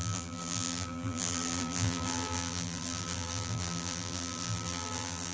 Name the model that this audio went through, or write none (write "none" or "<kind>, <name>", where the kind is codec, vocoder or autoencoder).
vocoder, BigVGAN v2